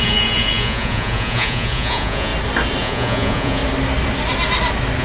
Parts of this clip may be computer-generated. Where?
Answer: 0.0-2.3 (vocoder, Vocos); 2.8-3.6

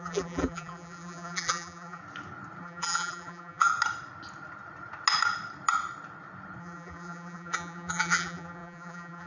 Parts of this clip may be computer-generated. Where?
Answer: 0.0-2.0 (vocoder, BigVGAN v2); 2.6-3.7; 6.6-9.3

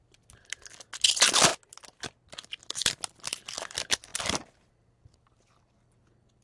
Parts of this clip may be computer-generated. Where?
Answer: none

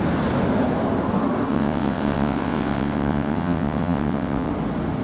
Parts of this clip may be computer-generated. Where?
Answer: 1.5-4.5 (vocoder, WaveNeXt)

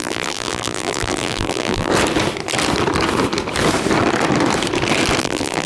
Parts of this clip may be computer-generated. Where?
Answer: 0.0-1.9 (vocoder, BigVGAN v2); 5.2-5.7

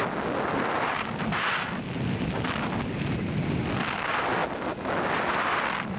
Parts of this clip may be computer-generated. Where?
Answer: none

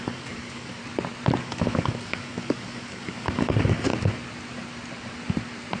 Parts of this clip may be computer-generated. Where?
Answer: 0.0-0.8 (codec, DAC); 1.4-3.9

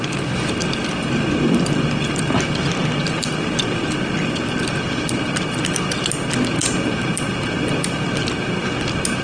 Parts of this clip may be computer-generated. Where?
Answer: 0.8-4.6 (vocoder, BigVGAN v2); 6.6-8.1